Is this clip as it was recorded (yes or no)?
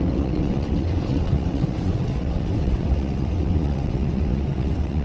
no